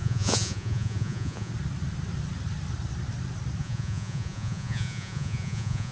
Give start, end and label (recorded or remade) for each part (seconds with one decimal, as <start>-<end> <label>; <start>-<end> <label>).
0.0-1.5 remade; 1.5-3.6 recorded; 3.6-5.9 remade